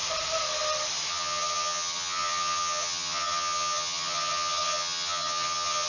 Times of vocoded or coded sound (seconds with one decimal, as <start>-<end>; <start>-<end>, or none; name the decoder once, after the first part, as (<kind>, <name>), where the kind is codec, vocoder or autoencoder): 1.1-5.9 (vocoder, HiFi-GAN)